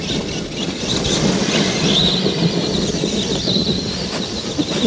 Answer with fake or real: real